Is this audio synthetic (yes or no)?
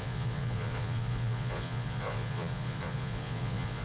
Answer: yes